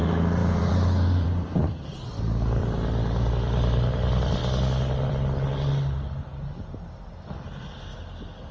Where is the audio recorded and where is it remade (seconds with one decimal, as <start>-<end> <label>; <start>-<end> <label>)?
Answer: 0.0-0.4 recorded; 0.4-3.3 remade; 3.3-8.5 recorded